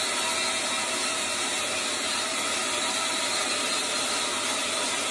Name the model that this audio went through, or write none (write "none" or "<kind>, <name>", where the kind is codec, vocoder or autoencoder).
none